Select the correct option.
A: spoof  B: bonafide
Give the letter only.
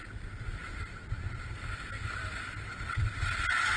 B